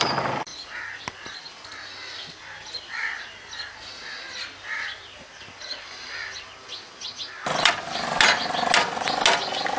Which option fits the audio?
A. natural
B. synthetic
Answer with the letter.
A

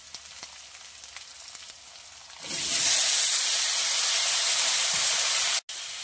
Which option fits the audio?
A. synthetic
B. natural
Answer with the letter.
B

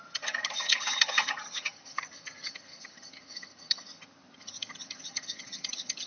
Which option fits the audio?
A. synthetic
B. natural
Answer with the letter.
A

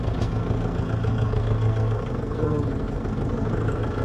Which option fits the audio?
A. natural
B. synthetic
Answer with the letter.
B